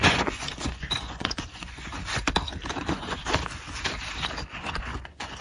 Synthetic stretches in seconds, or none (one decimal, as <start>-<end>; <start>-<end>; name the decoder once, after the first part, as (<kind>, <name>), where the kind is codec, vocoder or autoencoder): 0.0-1.9 (vocoder, Vocos); 2.8-3.2; 4.5-5.4